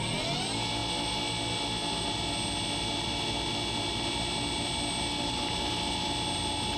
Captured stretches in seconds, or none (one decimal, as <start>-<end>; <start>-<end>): 0.0-6.8